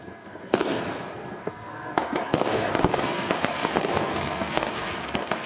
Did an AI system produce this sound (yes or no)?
yes